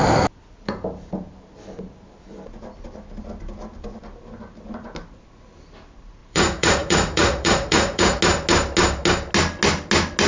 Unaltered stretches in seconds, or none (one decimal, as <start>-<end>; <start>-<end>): 0.0-6.2; 8.2-10.3

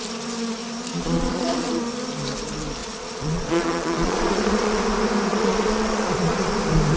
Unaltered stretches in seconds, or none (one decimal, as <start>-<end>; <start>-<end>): 0.0-0.9; 1.7-2.8; 4.8-5.3; 6.5-7.0

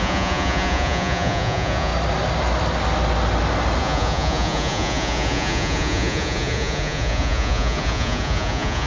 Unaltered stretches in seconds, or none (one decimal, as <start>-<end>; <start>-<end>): 1.9-3.8

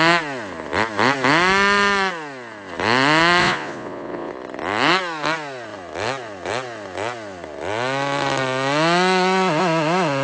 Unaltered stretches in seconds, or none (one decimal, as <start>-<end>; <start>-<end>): 0.0-3.4; 4.3-10.2

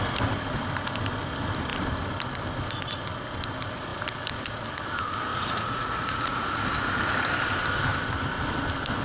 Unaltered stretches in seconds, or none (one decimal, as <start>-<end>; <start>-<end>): 0.0-5.3; 6.7-9.0